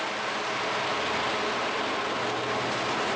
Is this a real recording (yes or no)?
yes